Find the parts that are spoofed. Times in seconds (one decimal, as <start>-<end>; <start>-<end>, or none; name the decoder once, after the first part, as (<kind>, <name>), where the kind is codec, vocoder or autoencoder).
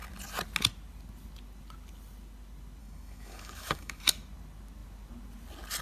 2.8-4.0 (codec, DAC)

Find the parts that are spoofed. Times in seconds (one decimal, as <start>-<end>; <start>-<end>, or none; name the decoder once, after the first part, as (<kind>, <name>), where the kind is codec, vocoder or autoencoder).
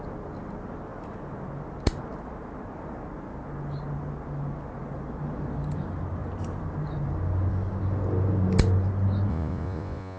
9.3-10.2 (vocoder, Vocos)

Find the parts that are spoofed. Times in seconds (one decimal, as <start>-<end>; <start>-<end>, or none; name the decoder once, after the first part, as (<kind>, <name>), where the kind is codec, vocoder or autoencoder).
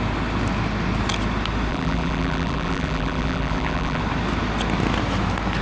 1.7-4.0 (vocoder, BigVGAN v2)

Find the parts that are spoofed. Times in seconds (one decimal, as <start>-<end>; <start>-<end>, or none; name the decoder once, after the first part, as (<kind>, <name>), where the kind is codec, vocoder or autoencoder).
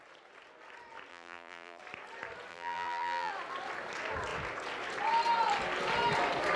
1.1-1.8 (vocoder, BigVGAN v2); 2.5-3.3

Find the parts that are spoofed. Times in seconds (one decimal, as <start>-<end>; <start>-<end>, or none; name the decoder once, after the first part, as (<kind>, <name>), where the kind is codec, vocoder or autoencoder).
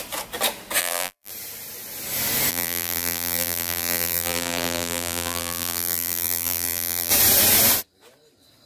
0.8-1.3 (vocoder, BigVGAN v2); 2.5-7.1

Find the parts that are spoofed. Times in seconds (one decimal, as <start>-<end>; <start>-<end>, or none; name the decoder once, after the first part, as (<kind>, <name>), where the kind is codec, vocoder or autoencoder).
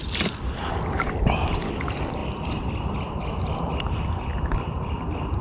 none